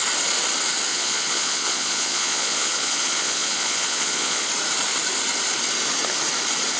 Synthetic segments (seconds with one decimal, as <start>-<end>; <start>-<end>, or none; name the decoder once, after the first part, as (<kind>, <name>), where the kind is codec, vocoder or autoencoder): 0.9-4.5 (vocoder, Vocos)